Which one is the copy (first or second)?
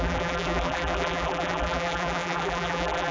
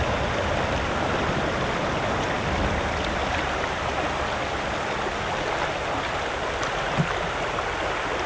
first